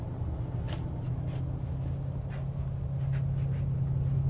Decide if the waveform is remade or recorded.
recorded